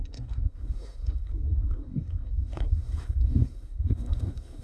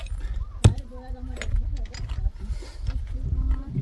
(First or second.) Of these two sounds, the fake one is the first